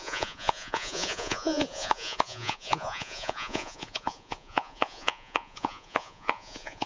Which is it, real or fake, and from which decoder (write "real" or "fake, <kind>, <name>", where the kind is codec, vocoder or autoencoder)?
fake, vocoder, Vocos